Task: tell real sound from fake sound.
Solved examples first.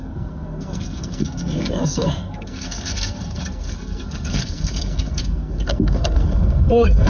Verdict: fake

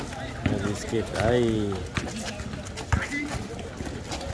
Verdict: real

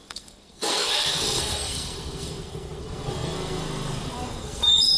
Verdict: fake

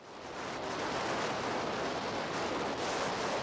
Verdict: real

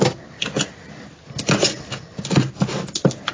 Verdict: real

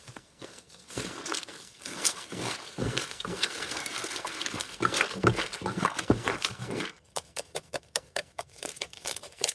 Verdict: fake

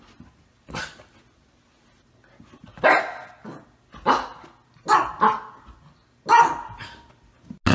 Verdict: real